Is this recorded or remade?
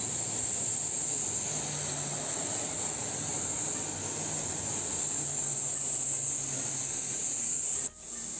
recorded